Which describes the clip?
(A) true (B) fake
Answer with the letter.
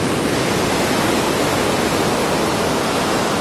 A